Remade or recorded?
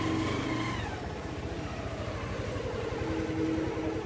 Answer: recorded